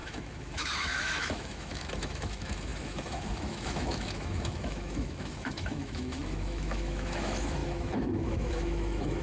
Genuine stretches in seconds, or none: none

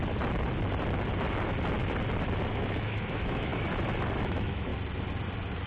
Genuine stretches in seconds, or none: 0.0-2.5; 3.5-4.2; 4.7-5.7

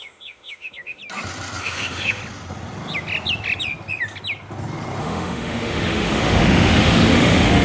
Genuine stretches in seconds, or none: 1.0-1.6; 2.2-5.0

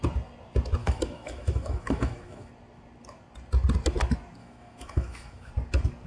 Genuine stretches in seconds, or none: 0.0-0.8; 2.5-4.4; 5.5-6.1